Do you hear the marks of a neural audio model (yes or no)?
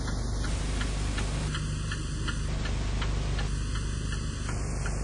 no